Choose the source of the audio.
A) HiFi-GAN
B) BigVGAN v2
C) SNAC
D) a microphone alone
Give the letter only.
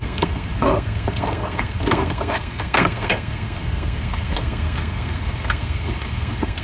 C